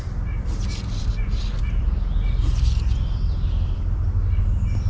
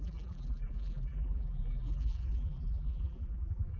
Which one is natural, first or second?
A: first